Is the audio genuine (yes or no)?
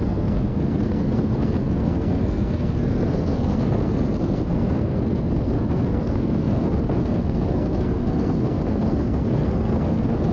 no